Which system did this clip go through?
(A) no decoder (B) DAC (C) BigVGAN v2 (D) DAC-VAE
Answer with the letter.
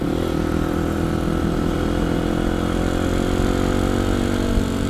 A